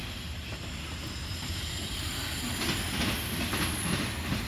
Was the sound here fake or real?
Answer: fake